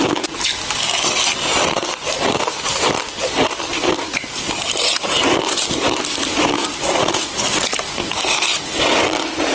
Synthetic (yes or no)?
no